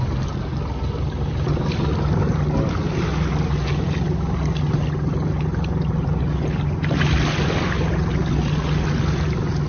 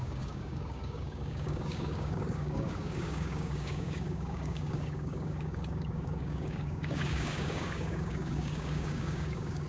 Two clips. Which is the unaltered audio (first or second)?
first